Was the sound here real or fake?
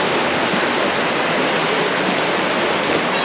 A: real